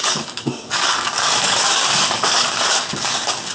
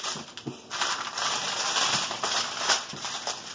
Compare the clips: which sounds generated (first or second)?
first